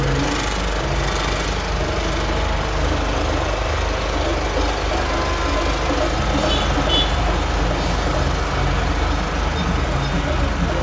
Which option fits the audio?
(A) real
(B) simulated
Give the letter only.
A